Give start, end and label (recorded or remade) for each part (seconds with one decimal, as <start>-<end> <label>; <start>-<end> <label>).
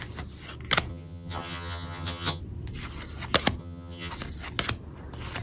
0.0-0.9 recorded; 0.9-2.4 remade; 2.4-3.6 recorded; 3.6-4.1 remade; 4.1-5.4 recorded